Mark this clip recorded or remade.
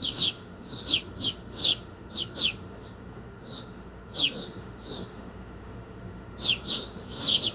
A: remade